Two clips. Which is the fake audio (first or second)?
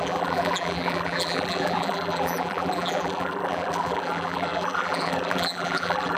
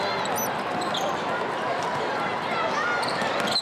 first